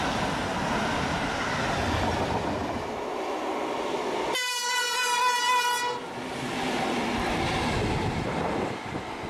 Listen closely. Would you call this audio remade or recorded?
recorded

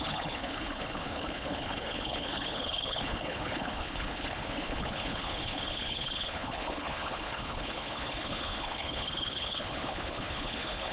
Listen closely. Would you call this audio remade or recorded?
remade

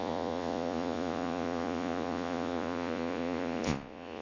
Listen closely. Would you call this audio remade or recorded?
remade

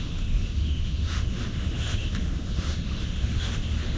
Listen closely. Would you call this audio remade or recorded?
remade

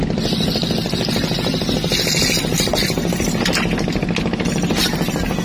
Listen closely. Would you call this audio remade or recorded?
recorded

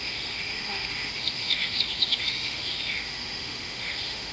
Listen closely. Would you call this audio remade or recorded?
remade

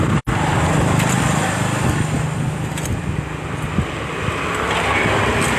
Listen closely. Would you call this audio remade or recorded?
recorded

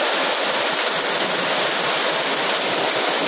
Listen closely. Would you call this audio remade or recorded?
recorded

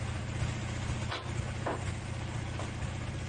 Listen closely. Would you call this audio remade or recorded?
recorded